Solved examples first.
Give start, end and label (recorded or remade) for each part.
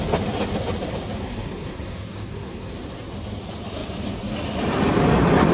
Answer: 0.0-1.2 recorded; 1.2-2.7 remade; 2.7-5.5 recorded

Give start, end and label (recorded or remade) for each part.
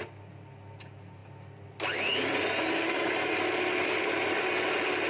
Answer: 0.0-5.1 recorded